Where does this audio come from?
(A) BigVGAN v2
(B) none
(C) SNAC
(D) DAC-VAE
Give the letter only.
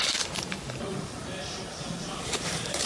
A